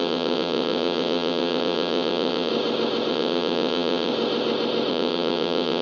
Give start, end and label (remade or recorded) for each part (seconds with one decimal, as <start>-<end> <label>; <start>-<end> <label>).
0.0-2.5 remade; 2.5-3.1 recorded; 3.1-4.1 remade; 4.1-4.9 recorded; 4.9-5.8 remade